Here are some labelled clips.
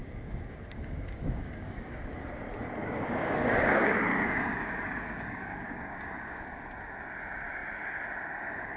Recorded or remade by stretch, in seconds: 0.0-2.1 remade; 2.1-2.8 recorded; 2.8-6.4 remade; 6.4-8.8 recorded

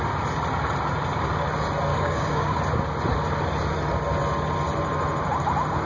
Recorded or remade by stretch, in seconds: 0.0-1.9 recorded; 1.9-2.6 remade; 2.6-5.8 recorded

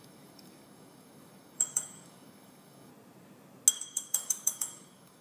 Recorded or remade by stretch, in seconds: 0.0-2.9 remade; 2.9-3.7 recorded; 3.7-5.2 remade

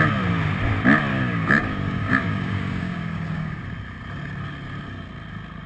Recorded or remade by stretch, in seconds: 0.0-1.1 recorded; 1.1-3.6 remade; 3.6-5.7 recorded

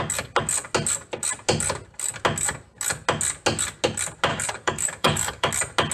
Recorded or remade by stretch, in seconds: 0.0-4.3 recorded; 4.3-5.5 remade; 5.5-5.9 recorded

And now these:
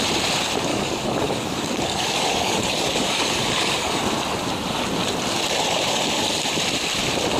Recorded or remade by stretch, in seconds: 0.0-0.7 recorded; 0.7-4.0 remade; 4.0-7.4 recorded

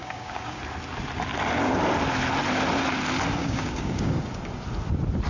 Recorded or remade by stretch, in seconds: 0.0-0.6 remade; 0.6-3.4 recorded; 3.4-4.1 remade; 4.1-5.3 recorded

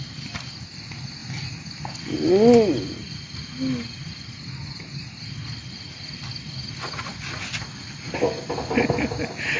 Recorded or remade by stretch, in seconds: 0.0-9.6 recorded